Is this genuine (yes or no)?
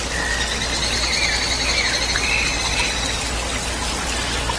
yes